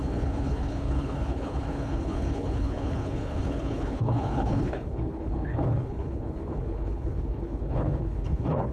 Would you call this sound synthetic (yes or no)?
yes